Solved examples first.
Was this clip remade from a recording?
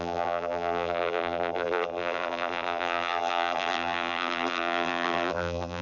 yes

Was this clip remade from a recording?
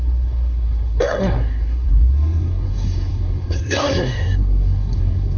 yes